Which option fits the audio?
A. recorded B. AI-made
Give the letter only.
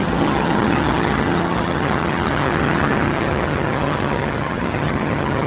B